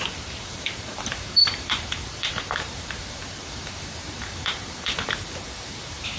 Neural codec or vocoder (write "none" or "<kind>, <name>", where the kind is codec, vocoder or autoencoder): vocoder, BigVGAN v2